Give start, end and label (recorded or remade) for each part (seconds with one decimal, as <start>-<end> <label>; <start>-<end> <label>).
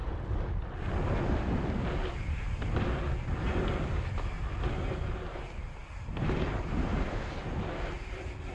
0.0-8.5 recorded